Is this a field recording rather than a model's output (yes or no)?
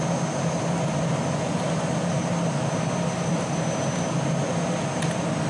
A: yes